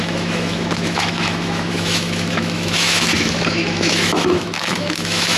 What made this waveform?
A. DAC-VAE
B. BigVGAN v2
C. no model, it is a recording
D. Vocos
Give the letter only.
A